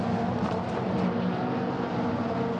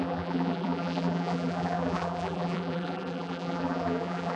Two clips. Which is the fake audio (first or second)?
second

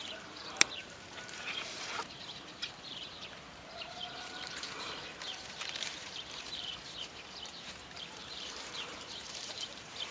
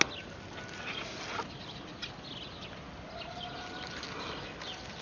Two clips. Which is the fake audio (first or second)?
first